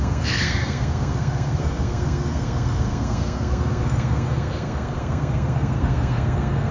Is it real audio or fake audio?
fake